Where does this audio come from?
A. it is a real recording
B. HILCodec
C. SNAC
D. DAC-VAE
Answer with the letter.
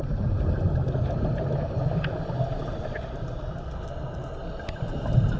A